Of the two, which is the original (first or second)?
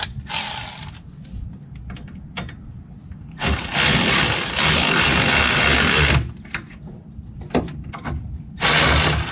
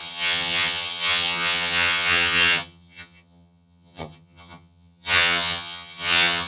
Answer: first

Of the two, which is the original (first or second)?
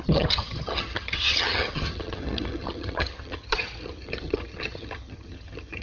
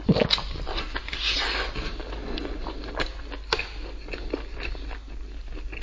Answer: second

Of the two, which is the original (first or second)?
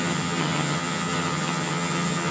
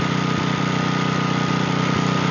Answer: second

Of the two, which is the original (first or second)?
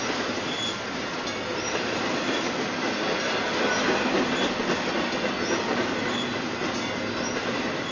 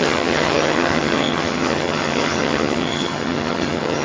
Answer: first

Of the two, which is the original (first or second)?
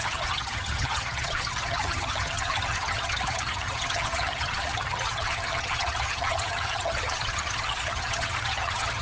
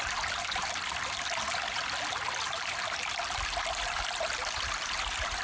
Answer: second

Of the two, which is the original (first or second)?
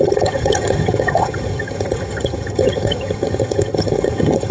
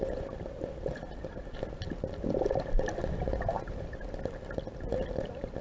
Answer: second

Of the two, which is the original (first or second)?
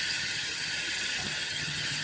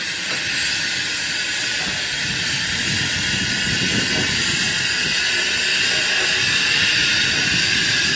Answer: second